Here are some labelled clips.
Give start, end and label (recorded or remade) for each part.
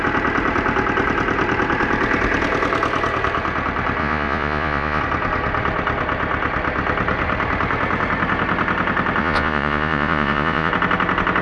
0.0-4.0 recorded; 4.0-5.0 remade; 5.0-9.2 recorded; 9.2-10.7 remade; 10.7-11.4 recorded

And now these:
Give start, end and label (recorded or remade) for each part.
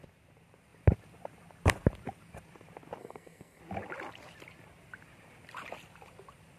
0.0-3.0 recorded; 3.0-3.6 remade; 3.6-6.6 recorded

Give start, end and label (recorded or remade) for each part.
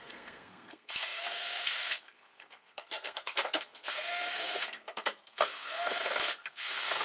0.0-7.0 remade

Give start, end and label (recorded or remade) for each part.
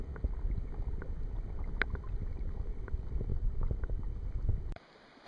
0.0-3.3 recorded; 3.3-4.1 remade; 4.1-5.3 recorded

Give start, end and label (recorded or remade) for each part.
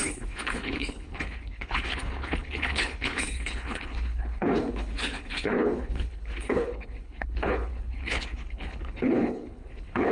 0.0-10.1 remade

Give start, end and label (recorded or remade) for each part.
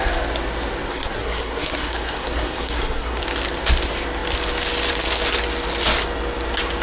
0.0-0.9 recorded; 0.9-3.2 remade; 3.2-6.8 recorded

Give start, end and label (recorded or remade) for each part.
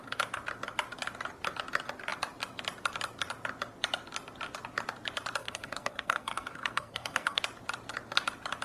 0.0-5.4 recorded; 5.4-7.4 remade; 7.4-8.6 recorded